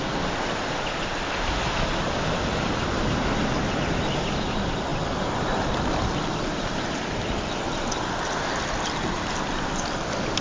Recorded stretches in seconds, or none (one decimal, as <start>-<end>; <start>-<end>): 0.0-10.4